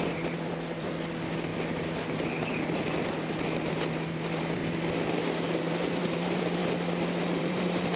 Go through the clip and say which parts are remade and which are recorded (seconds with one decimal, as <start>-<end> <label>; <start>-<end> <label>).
0.0-1.5 remade; 1.5-3.9 recorded; 3.9-4.6 remade; 4.6-5.6 recorded; 5.6-6.6 remade; 6.6-7.4 recorded; 7.4-8.0 remade